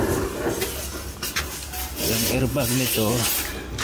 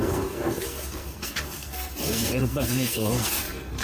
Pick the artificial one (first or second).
second